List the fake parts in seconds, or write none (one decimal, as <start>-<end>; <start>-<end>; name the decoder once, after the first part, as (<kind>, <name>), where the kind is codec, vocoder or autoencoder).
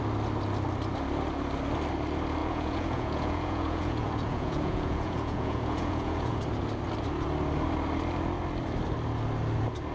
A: 2.4-6.4 (vocoder, Vocos)